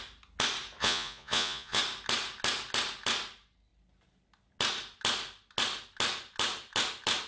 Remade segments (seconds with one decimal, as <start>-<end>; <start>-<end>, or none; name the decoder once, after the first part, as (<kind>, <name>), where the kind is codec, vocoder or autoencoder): 0.8-1.8 (vocoder, Vocos)

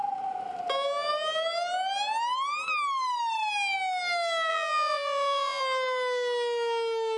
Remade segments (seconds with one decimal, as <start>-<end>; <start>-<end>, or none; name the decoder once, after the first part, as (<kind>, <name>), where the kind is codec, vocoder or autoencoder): 4.5-5.6 (vocoder, Vocos)

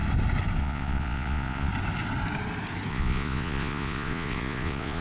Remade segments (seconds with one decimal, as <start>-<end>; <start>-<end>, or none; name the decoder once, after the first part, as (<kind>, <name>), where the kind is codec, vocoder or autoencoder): 0.6-1.7 (vocoder, Vocos); 2.9-5.0

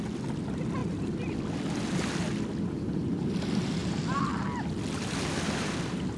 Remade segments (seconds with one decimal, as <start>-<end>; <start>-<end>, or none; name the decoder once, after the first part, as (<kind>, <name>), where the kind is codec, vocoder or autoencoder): none

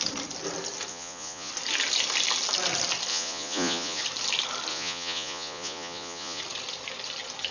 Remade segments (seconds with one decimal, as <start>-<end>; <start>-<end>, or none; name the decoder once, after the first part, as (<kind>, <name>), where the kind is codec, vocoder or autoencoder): 0.9-1.5 (vocoder, Vocos); 3.1-4.0; 4.7-6.4

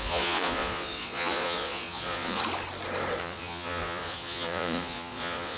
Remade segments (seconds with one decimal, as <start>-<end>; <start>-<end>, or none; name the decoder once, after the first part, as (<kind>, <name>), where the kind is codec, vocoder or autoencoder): 0.0-2.4 (vocoder, Vocos); 3.2-5.6

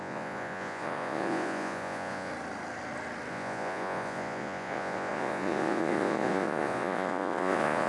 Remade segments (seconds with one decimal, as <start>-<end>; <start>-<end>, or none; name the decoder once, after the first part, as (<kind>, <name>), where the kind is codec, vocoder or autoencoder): 0.0-2.3 (vocoder, Vocos); 3.3-7.9